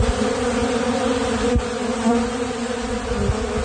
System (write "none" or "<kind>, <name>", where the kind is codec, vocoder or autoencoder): none